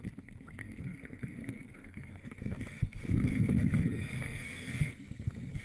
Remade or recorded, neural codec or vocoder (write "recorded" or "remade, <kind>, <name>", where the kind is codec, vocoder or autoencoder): remade, codec, SNAC